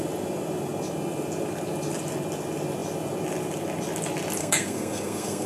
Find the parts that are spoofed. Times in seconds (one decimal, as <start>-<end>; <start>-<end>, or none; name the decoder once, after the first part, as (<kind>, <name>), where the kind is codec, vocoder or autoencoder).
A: 4.4-5.5 (codec, SNAC)